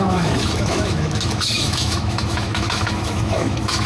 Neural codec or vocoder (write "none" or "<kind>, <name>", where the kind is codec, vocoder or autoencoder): autoencoder, DAC-VAE